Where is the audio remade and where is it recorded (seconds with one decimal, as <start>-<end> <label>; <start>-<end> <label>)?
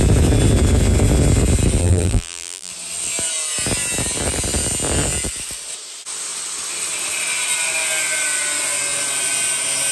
0.0-1.8 recorded; 1.8-2.7 remade; 2.7-9.9 recorded